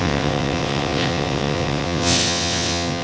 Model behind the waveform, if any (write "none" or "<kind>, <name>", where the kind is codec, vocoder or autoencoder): vocoder, WaveNeXt